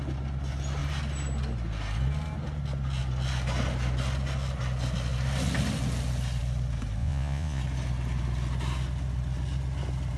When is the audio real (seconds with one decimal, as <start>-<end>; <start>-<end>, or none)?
0.0-7.0; 7.6-10.2